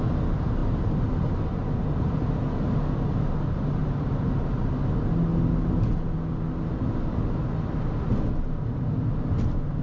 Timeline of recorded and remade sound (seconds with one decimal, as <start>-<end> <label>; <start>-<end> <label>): 0.0-9.8 recorded

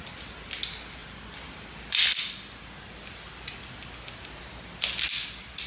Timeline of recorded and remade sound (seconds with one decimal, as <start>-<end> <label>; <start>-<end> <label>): 0.0-5.7 recorded